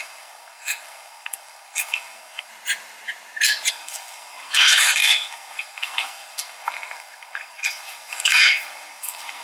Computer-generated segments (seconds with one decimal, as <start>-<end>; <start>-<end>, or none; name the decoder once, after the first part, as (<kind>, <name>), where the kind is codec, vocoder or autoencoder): 0.0-2.5 (codec, SNAC); 3.7-9.4